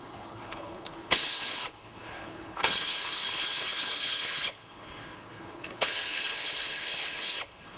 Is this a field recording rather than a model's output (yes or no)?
no